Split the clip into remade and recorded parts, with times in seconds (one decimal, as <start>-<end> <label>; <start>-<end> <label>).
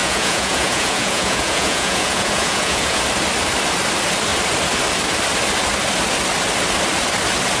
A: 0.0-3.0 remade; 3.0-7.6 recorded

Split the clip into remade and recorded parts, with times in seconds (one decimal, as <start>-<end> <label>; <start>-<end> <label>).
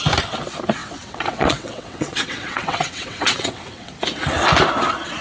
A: 0.0-0.8 recorded; 0.8-3.9 remade; 3.9-5.2 recorded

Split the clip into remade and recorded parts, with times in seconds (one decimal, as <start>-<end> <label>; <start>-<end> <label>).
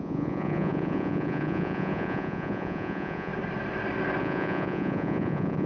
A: 0.0-3.3 remade; 3.3-4.2 recorded; 4.2-5.7 remade